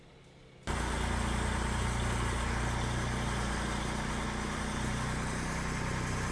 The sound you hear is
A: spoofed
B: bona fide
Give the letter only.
B